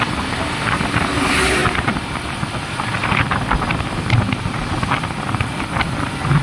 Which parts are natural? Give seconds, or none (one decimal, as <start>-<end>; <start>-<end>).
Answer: 0.0-6.4